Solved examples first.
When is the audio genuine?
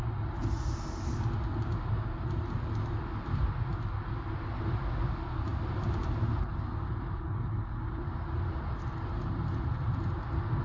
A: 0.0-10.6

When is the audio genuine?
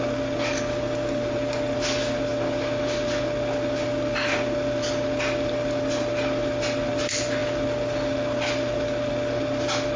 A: 0.0-10.0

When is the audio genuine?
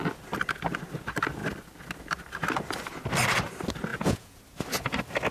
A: 0.0-3.9; 4.4-5.3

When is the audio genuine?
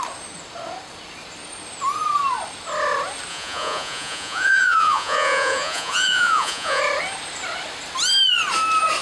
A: 0.0-3.3; 6.8-9.0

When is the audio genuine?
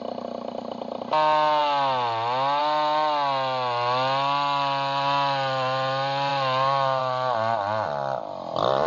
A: 0.0-8.9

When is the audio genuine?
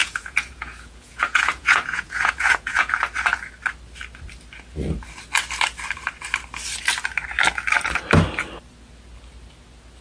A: 2.9-10.0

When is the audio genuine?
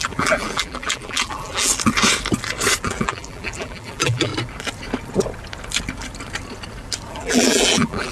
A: 1.7-2.8; 4.3-7.1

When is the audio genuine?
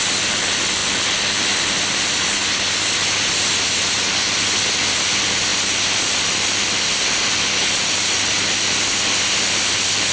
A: 0.0-10.1